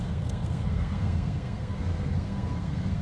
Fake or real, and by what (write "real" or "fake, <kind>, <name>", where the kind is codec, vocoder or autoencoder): fake, codec, SNAC